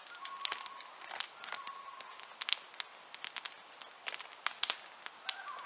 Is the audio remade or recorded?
recorded